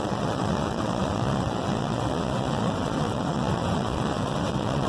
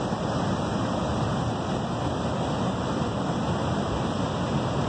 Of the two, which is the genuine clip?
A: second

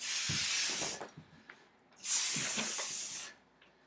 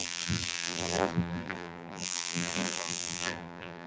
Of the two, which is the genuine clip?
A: first